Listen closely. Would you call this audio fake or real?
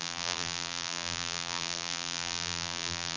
fake